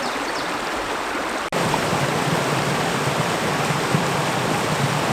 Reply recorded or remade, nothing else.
recorded